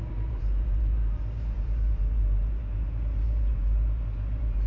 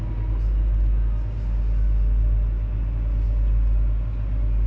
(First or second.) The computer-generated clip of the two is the first